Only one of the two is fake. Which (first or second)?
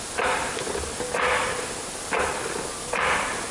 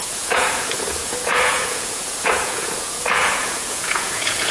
second